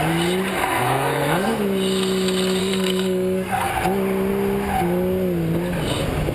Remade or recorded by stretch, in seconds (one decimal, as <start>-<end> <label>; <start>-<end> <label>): 0.0-0.5 recorded; 0.5-1.6 remade; 1.6-2.6 recorded; 2.6-3.7 remade; 3.7-6.3 recorded